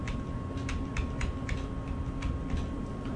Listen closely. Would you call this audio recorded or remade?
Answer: recorded